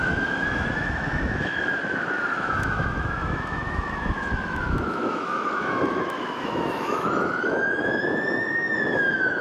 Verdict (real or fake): fake